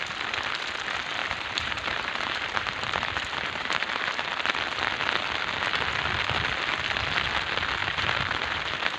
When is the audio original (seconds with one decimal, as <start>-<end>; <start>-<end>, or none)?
0.0-1.2; 4.3-7.8